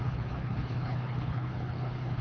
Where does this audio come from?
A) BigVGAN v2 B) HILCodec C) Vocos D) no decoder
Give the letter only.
B